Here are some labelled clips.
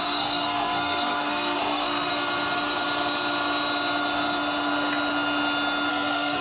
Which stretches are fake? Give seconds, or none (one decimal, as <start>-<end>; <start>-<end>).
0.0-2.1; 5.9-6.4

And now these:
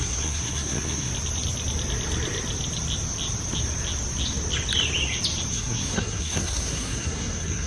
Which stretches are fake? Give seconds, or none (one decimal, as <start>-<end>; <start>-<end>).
0.0-1.1; 5.5-7.7

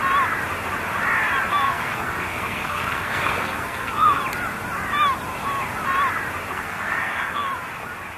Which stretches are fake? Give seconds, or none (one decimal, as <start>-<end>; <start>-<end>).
1.5-4.2; 6.5-7.5